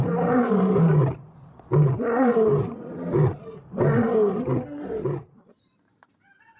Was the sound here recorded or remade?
remade